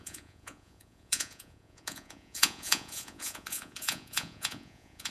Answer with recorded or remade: remade